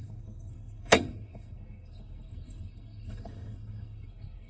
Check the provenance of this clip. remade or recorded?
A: remade